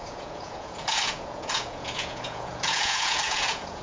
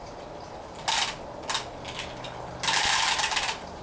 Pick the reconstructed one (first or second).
first